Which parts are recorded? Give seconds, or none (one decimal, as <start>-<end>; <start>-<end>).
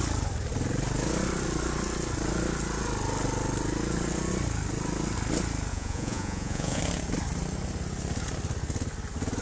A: 0.0-5.7; 6.8-9.4